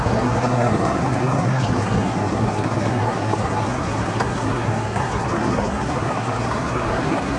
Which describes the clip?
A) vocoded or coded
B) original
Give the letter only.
A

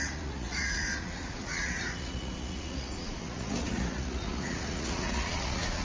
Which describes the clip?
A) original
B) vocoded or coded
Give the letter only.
B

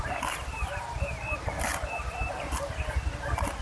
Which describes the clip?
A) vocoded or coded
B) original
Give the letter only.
B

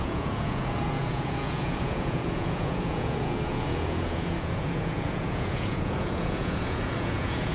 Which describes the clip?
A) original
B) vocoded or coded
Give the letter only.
B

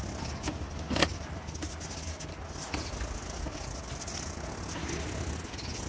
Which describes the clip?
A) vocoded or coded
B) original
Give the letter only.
B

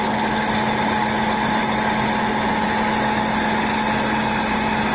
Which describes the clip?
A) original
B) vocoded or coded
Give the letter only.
A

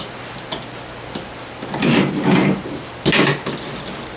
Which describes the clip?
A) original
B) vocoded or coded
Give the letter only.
A